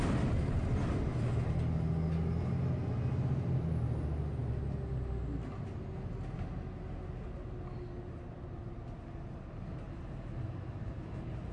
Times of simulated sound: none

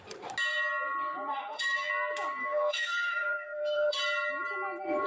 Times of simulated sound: 1.3-1.9; 2.4-4.0

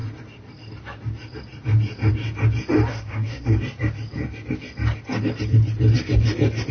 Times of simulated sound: 2.9-3.6

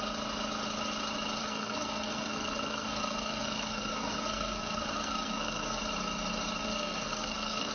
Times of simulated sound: 1.4-5.8; 6.6-7.7